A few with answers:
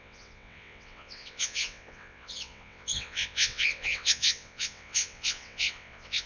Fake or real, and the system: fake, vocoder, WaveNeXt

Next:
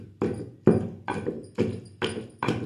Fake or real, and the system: real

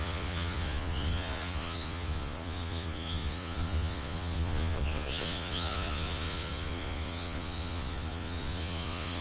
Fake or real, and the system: fake, vocoder, Vocos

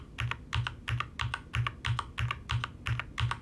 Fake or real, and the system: real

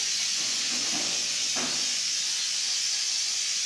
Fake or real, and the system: fake, vocoder, Vocos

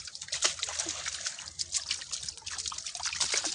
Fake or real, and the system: real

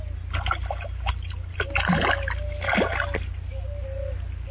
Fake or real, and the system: real